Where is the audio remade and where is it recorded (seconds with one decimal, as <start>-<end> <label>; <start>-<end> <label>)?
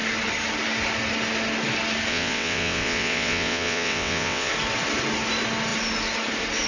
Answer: 0.0-2.1 recorded; 2.1-4.5 remade; 4.5-6.7 recorded